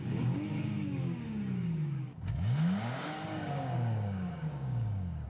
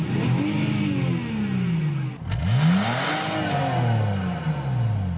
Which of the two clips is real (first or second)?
second